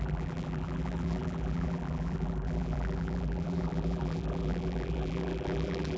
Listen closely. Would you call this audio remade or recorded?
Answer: remade